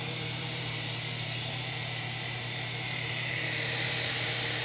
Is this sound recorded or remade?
remade